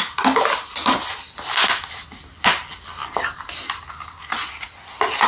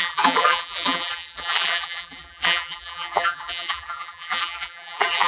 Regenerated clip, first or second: second